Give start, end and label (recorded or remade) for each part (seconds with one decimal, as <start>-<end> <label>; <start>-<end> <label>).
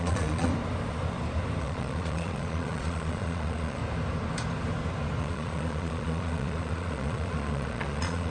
0.0-0.5 remade; 0.5-1.6 recorded; 1.6-3.8 remade; 3.8-5.2 recorded; 5.2-8.3 remade